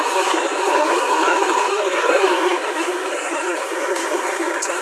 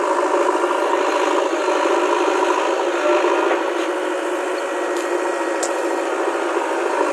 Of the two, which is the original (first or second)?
second